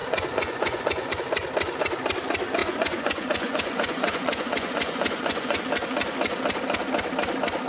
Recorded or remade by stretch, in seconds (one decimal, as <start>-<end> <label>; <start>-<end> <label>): 0.0-1.1 remade; 1.1-2.6 recorded; 2.6-5.6 remade; 5.6-7.7 recorded